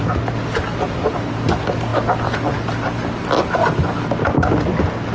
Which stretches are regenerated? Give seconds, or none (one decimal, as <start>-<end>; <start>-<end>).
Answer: none